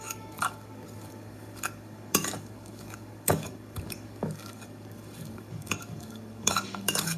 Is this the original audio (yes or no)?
no